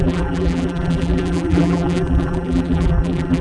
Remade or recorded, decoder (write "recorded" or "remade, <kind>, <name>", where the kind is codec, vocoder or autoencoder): remade, vocoder, BigVGAN v2